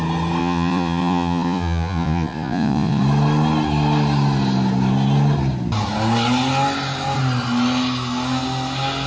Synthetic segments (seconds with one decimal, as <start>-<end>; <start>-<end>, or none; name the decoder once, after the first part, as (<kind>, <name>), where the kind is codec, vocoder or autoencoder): 0.4-3.0 (vocoder, Vocos)